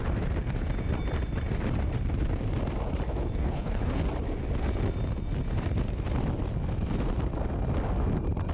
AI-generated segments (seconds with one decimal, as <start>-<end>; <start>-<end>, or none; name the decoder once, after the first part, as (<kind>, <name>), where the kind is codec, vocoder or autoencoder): 3.4-4.0 (codec, HILCodec)